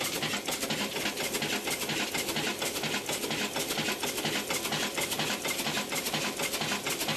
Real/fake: real